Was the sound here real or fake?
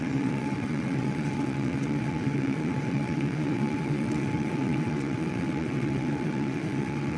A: fake